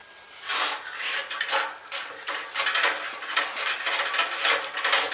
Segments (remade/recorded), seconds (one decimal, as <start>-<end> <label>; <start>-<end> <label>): 0.0-5.1 recorded